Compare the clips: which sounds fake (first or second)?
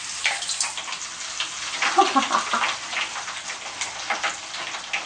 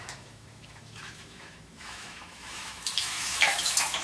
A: second